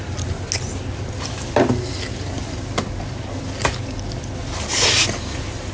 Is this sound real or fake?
real